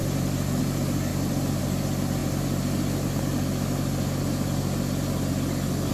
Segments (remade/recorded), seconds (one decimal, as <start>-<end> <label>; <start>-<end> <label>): 0.0-1.1 recorded; 1.1-1.6 remade; 1.6-5.9 recorded